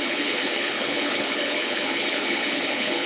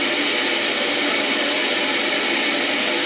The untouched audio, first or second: second